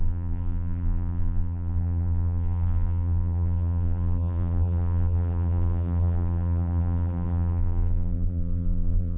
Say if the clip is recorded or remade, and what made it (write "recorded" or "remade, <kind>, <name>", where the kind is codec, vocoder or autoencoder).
remade, vocoder, BigVGAN v2